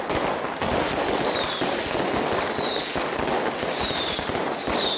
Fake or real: real